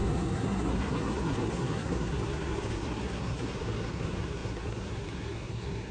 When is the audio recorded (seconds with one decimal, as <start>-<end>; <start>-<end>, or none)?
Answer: none